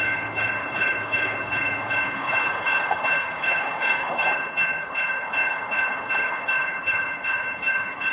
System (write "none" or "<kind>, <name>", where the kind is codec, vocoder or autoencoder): codec, HILCodec